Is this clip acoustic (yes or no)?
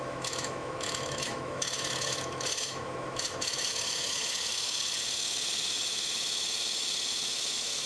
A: no